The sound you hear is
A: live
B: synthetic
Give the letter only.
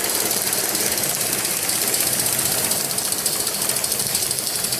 A